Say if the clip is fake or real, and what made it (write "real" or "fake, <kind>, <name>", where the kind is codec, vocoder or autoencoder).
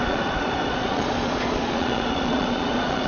fake, vocoder, Vocos